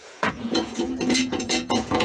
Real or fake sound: fake